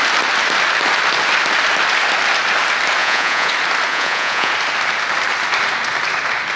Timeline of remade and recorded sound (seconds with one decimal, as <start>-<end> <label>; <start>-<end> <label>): 0.0-3.0 recorded; 3.0-3.5 remade; 3.5-3.9 recorded; 3.9-4.5 remade; 4.5-6.6 recorded